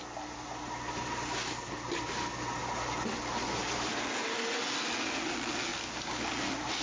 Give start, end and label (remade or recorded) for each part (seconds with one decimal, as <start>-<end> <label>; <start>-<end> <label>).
0.0-6.8 recorded